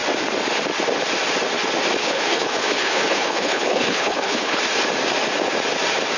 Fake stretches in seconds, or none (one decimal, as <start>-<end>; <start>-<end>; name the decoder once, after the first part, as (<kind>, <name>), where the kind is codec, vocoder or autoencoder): 2.0-4.6 (codec, HILCodec)